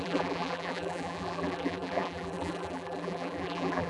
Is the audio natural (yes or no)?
no